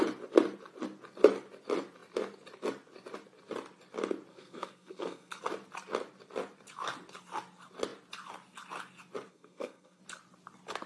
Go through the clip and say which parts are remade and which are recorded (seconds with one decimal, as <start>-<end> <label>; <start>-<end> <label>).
0.0-4.3 recorded; 4.3-5.4 remade; 5.4-9.3 recorded; 9.3-10.0 remade; 10.0-10.9 recorded